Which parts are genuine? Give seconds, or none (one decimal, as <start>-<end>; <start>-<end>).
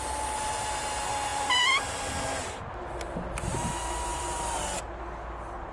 0.0-1.3; 2.1-4.1; 4.7-5.7